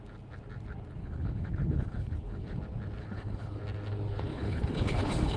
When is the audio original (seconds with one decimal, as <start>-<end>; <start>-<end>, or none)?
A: 0.0-1.0; 2.6-3.0; 3.6-4.3

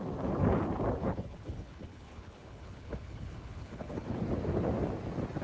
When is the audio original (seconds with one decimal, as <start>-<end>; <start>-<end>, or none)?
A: 0.0-1.0; 4.2-5.4